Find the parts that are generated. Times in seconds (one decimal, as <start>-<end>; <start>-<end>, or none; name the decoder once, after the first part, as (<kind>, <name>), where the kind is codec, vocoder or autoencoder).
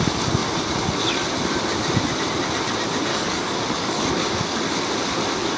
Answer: 3.1-4.1 (codec, DAC)